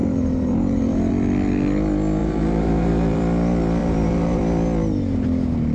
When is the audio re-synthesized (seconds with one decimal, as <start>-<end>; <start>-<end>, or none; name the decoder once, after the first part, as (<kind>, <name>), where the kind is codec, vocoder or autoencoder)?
0.0-1.1 (vocoder, BigVGAN v2); 2.2-3.2; 3.8-4.4